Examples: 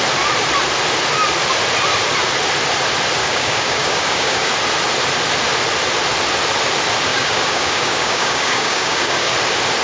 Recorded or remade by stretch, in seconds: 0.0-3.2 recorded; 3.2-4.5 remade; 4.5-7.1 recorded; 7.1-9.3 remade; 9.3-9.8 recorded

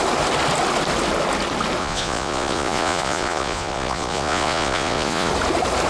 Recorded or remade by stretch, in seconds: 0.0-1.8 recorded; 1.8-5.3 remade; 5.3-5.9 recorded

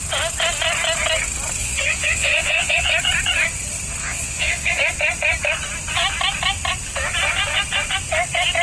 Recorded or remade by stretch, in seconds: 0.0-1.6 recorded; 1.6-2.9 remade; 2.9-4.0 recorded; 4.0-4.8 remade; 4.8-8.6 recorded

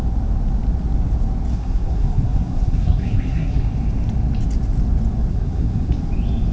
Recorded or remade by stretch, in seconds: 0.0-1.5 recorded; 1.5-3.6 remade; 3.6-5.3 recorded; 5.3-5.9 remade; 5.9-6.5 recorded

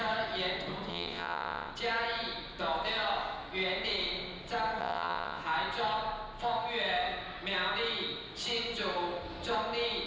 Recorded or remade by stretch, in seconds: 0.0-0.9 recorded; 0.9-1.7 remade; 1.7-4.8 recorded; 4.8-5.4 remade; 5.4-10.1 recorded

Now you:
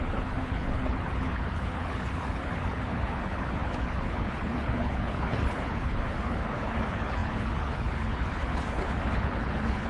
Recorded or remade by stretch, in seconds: 0.0-9.9 remade

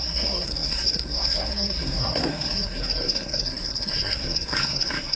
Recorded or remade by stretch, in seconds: 0.0-5.2 remade